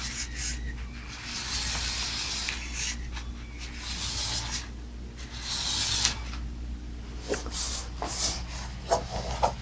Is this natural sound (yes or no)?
yes